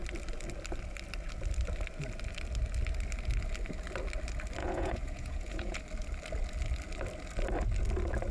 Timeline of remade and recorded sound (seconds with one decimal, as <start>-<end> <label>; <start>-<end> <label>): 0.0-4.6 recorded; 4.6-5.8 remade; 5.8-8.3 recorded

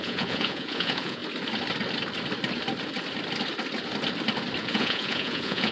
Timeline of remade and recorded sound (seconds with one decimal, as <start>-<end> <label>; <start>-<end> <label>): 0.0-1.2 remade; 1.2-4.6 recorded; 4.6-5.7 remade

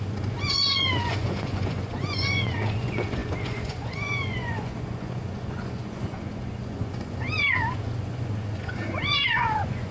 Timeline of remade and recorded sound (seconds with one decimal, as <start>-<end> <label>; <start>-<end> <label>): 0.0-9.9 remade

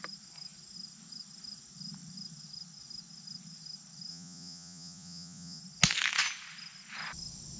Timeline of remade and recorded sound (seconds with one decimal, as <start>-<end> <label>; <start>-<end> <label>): 0.0-4.1 recorded; 4.1-5.6 remade; 5.6-7.6 recorded